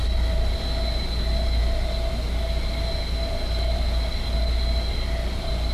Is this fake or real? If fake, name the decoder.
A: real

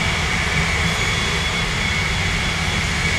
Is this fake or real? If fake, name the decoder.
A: real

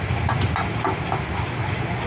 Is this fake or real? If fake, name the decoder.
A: real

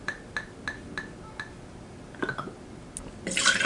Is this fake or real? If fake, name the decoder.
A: real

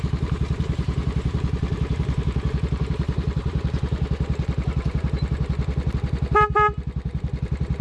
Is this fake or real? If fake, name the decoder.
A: fake, vocoder, BigVGAN v2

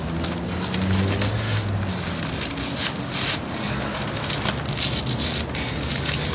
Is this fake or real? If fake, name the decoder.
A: real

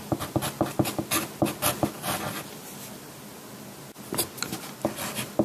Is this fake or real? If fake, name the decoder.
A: real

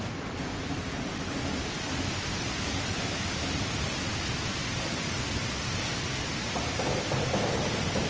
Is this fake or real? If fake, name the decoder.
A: fake, vocoder, BigVGAN v2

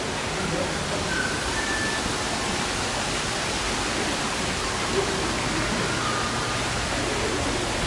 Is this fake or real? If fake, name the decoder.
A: real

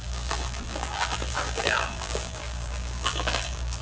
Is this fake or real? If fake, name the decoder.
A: fake, vocoder, BigVGAN v2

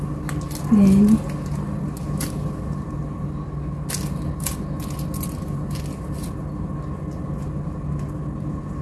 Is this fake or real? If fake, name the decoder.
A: real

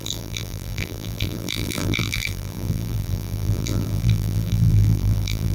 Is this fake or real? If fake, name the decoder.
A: fake, vocoder, BigVGAN v2